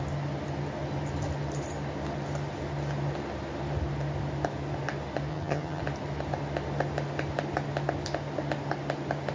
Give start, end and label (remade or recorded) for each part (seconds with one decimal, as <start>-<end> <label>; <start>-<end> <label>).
0.0-5.3 recorded; 5.3-5.8 remade; 5.8-9.3 recorded